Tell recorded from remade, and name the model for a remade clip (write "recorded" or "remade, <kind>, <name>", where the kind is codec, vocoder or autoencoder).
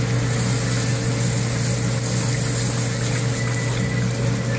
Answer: recorded